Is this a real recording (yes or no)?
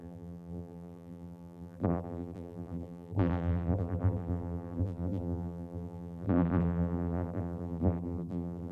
no